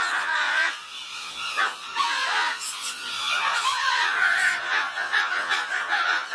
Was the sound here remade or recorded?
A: remade